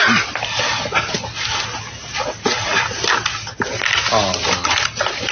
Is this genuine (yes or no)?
yes